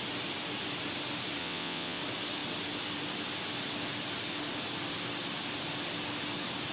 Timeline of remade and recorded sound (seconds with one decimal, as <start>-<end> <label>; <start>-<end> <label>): 0.0-1.4 recorded; 1.4-2.0 remade; 2.0-6.7 recorded